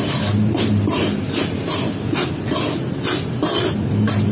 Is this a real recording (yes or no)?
yes